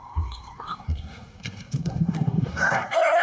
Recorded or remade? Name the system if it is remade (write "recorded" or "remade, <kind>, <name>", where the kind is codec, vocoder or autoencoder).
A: remade, codec, SNAC